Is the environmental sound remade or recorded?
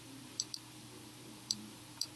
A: remade